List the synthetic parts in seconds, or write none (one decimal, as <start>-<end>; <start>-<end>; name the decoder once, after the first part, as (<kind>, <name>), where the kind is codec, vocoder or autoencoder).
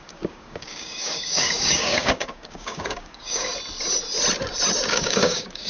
0.0-3.5 (codec, DAC); 4.9-5.7